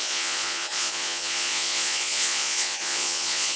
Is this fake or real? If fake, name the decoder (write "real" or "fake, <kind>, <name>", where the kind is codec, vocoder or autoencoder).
fake, vocoder, Vocos